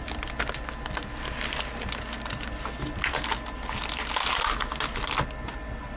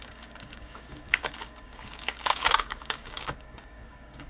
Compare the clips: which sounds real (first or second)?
first